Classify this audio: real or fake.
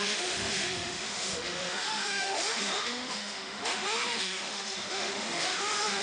fake